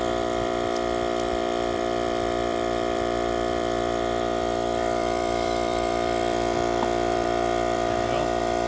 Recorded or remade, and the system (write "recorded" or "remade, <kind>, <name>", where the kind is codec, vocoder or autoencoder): remade, vocoder, BigVGAN v2